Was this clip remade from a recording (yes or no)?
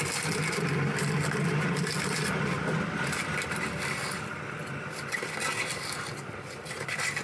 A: no